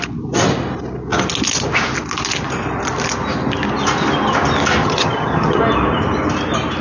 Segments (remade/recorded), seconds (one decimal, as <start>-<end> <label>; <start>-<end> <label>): 0.0-4.8 recorded; 4.8-5.6 remade; 5.6-6.8 recorded